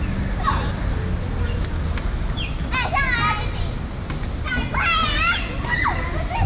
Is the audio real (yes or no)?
yes